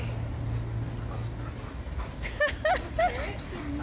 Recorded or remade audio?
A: recorded